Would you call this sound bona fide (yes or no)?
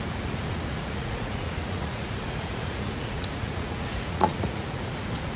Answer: no